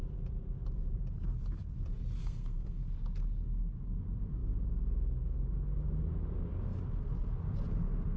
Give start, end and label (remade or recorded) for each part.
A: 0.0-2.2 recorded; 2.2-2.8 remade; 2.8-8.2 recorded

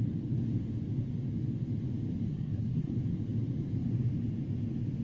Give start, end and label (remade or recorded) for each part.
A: 0.0-2.3 recorded; 2.3-2.9 remade; 2.9-5.0 recorded

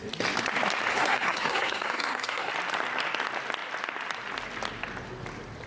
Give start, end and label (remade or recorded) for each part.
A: 0.0-0.9 recorded; 0.9-2.5 remade; 2.5-5.7 recorded

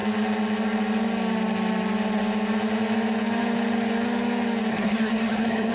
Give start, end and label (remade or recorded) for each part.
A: 0.0-4.7 recorded; 4.7-5.7 remade

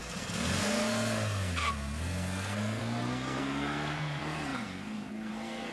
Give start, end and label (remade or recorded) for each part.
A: 0.0-5.7 remade

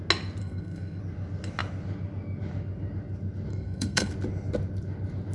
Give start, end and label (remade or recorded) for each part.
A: 0.0-0.4 recorded; 0.4-1.0 remade; 1.0-3.5 recorded; 3.5-4.1 remade; 4.1-5.3 recorded